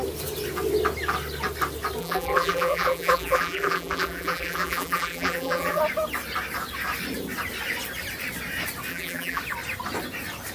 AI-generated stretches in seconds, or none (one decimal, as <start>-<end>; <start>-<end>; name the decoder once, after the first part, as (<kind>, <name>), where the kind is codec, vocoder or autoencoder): 2.0-5.8 (vocoder, BigVGAN v2); 8.9-9.4